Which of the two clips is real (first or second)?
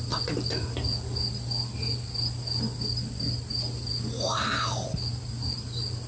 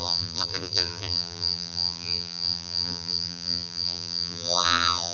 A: first